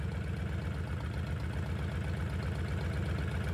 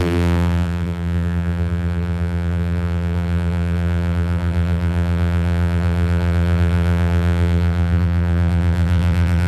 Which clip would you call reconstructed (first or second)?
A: second